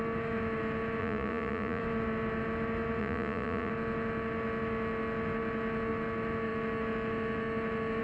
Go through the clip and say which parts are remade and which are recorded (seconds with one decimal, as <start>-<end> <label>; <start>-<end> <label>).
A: 0.0-1.0 recorded; 1.0-1.8 remade; 1.8-3.0 recorded; 3.0-3.7 remade; 3.7-8.0 recorded